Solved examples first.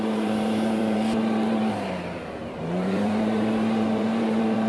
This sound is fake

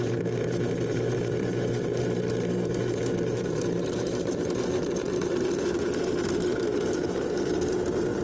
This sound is fake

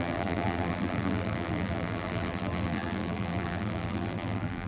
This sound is fake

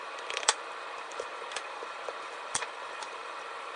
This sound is fake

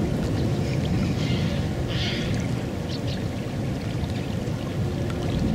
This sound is real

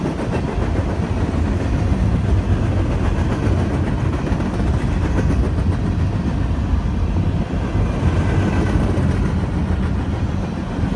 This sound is real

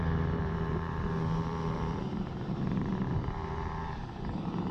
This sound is fake